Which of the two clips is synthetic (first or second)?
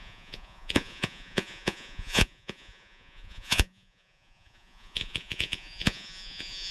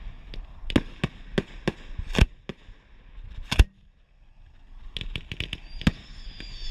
first